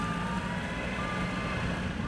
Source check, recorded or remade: recorded